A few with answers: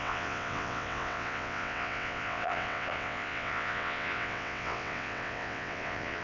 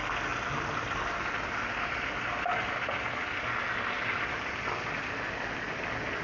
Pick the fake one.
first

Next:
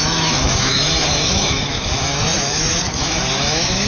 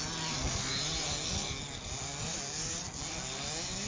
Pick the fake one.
first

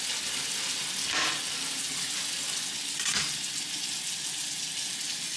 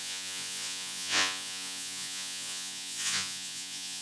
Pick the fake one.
second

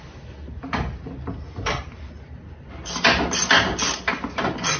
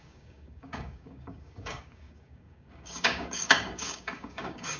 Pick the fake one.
second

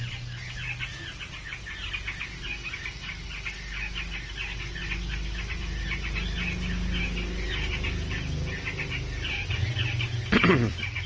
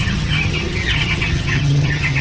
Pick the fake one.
second